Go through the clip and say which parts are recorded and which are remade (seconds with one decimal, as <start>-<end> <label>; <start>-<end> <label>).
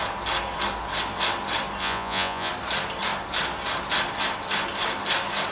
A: 0.0-1.8 recorded; 1.8-2.5 remade; 2.5-5.5 recorded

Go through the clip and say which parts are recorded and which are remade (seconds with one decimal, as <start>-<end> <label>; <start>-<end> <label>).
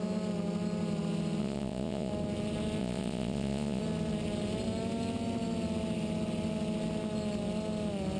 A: 0.0-1.4 recorded; 1.4-2.1 remade; 2.1-2.8 recorded; 2.8-3.8 remade; 3.8-8.2 recorded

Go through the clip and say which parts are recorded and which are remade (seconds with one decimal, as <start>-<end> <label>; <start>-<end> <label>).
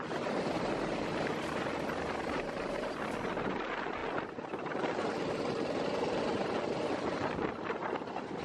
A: 0.0-4.0 remade; 4.0-6.2 recorded; 6.2-8.4 remade